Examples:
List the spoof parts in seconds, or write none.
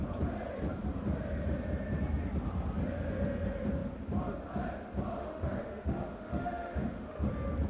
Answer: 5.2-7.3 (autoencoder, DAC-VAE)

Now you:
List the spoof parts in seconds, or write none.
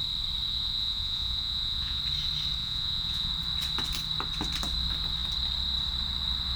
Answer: 0.5-2.0 (vocoder, Vocos); 2.6-3.3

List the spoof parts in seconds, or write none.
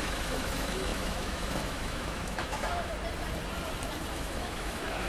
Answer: 0.0-2.9 (autoencoder, DAC-VAE); 4.1-5.1